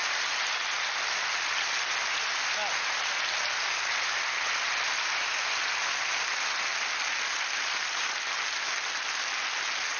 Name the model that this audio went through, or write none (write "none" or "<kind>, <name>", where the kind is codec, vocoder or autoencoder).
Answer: none